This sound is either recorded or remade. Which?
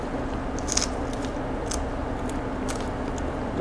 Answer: recorded